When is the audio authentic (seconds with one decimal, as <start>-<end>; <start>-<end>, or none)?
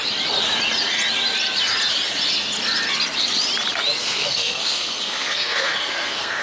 0.0-4.0